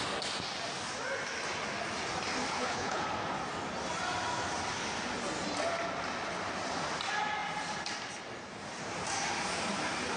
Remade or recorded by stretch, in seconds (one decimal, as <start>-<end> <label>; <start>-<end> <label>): 0.0-2.5 recorded; 2.5-3.0 remade; 3.0-10.2 recorded